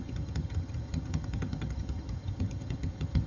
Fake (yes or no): yes